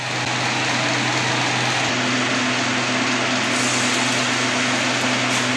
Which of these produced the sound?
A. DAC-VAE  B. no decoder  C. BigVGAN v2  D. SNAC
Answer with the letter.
B